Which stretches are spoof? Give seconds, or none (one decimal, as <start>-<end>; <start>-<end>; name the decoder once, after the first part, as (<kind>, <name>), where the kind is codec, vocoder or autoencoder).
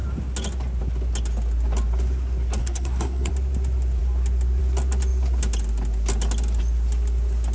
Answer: 2.6-3.3 (codec, SNAC)